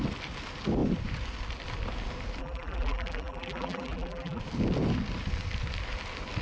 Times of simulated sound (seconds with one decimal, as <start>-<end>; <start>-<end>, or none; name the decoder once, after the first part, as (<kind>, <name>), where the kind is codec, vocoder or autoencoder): 2.4-4.4 (vocoder, BigVGAN v2)